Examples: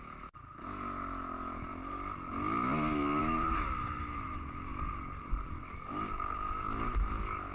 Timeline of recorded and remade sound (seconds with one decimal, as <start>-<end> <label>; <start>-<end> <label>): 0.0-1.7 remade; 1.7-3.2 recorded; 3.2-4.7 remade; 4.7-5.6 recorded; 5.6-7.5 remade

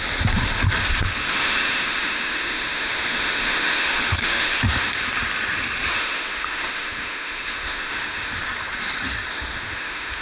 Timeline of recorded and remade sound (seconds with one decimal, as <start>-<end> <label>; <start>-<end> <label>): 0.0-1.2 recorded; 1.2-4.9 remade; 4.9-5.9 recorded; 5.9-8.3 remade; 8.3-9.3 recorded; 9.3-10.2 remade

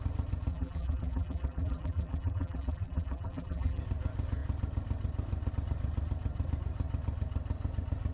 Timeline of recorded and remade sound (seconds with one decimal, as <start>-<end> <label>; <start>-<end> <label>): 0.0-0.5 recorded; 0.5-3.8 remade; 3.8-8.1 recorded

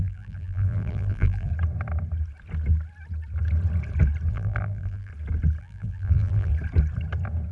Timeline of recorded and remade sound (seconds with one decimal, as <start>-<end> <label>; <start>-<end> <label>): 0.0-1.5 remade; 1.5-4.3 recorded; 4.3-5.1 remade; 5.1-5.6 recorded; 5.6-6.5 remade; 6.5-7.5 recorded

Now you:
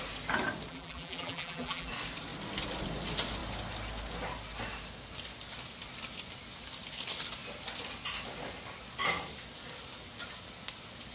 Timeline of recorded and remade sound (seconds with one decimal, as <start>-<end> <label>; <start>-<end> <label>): 0.0-0.7 recorded; 0.7-1.9 remade; 1.9-11.1 recorded

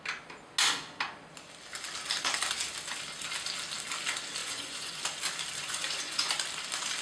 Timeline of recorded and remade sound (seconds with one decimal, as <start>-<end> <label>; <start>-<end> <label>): 0.0-4.4 recorded; 4.4-5.0 remade; 5.0-5.6 recorded; 5.6-6.3 remade; 6.3-7.0 recorded

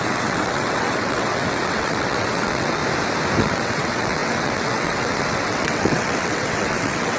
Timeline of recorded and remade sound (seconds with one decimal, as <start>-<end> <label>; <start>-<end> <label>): 0.0-2.8 remade; 2.8-3.4 recorded; 3.4-7.2 remade

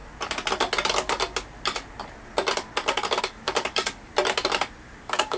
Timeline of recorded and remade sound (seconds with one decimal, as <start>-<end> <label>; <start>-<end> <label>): 0.0-3.2 recorded; 3.2-4.1 remade; 4.1-5.0 recorded; 5.0-5.4 remade